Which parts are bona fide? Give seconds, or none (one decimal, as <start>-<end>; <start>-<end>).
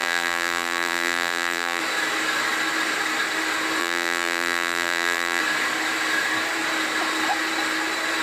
1.8-3.8; 5.4-8.2